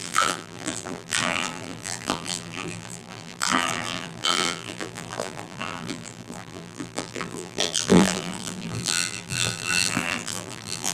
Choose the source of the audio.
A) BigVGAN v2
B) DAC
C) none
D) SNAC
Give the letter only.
A